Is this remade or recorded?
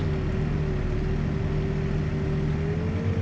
recorded